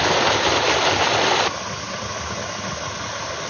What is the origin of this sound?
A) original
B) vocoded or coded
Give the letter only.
A